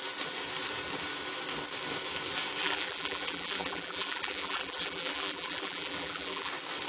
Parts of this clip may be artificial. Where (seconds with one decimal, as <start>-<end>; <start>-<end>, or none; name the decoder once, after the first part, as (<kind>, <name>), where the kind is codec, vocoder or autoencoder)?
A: 2.6-6.5 (vocoder, BigVGAN v2)